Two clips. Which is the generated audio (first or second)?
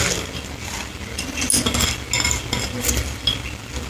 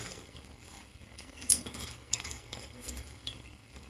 second